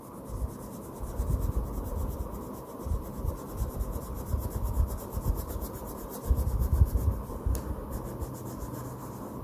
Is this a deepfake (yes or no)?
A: no